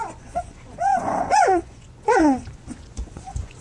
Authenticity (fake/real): fake